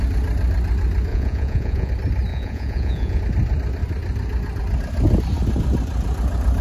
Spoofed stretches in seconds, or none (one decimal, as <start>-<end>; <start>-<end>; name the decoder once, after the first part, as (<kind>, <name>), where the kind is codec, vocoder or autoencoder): 1.1-1.9 (vocoder, Vocos); 2.3-3.2